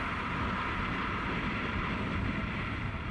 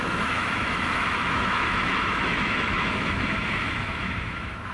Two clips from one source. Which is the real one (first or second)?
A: first